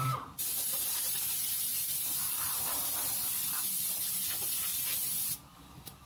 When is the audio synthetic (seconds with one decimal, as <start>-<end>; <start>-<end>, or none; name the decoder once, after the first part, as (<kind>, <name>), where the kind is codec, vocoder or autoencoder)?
4.7-6.1 (vocoder, BigVGAN v2)